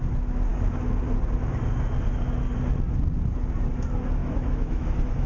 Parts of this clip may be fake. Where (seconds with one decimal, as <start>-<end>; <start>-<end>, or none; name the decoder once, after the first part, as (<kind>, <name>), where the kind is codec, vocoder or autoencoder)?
4.2-5.3 (autoencoder, DAC-VAE)